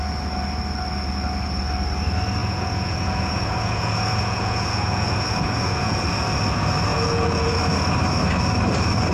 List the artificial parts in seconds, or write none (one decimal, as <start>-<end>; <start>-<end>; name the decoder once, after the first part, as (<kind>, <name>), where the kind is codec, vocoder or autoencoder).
2.4-6.0 (vocoder, Vocos); 6.9-7.6